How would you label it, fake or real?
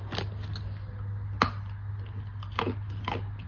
real